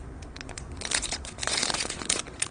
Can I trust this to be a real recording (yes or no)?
no